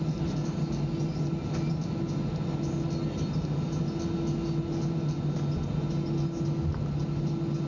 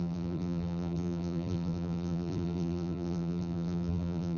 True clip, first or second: first